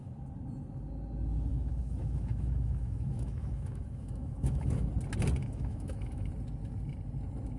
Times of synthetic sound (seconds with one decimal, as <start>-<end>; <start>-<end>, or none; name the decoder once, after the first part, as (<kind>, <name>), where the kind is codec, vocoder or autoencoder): 1.5-4.9 (autoencoder, DAC-VAE); 5.4-6.3